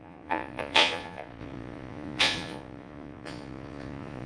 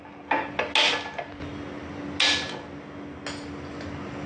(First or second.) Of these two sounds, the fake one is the first